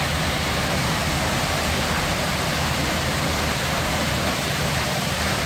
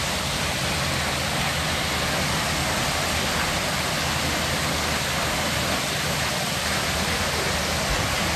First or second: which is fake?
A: first